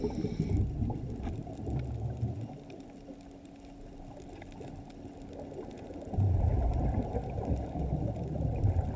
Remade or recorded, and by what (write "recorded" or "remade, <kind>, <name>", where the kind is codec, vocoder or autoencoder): recorded